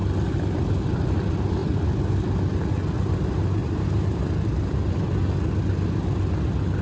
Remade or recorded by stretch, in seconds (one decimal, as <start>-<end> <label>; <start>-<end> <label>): 0.0-3.6 recorded; 3.6-4.9 remade; 4.9-6.8 recorded